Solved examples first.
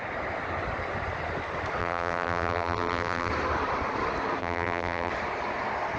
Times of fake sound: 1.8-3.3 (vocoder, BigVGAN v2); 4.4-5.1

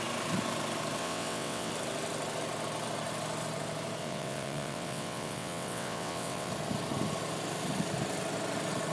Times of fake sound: 1.0-1.7 (vocoder, WaveNeXt); 4.0-6.5

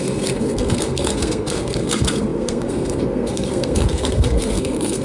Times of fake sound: 0.0-5.0 (codec, SNAC)

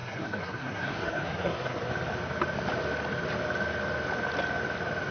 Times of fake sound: 0.0-1.9 (codec, SNAC)